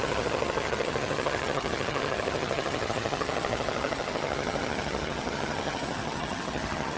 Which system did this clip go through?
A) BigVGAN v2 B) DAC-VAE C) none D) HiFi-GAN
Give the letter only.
D